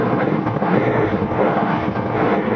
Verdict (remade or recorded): remade